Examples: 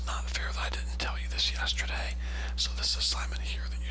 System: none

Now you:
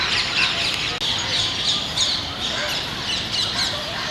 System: none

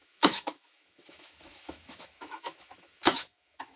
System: autoencoder, DAC-VAE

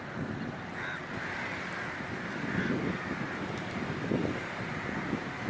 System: none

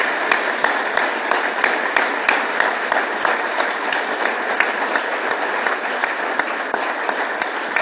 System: none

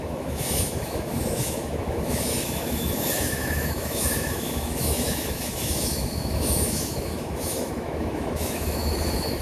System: autoencoder, DAC-VAE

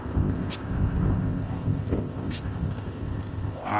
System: codec, ZipCodec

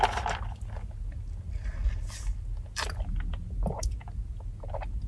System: none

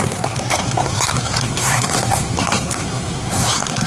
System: codec, SNAC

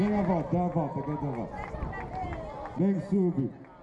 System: none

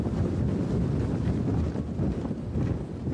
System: none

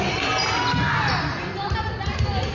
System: none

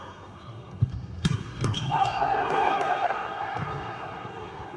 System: codec, SNAC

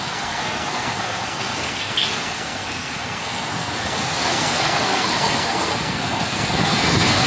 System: codec, SNAC